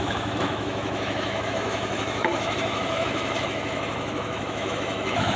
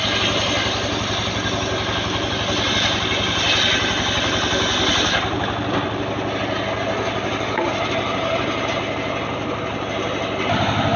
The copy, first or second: first